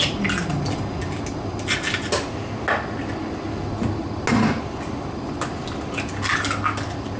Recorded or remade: recorded